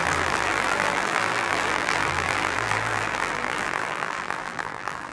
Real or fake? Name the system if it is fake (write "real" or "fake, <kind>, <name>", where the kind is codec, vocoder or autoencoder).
fake, vocoder, BigVGAN v2